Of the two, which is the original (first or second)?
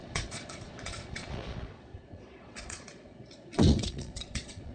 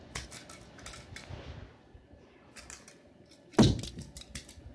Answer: second